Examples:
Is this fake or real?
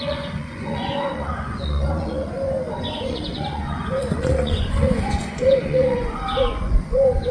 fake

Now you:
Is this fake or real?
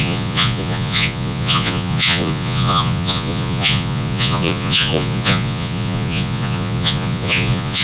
fake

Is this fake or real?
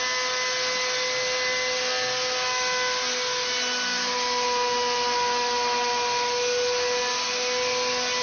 real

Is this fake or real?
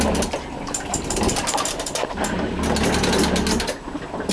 real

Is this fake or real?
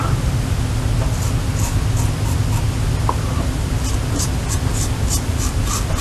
real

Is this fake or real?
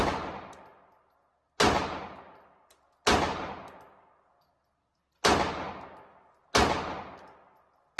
real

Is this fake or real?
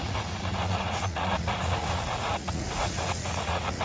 fake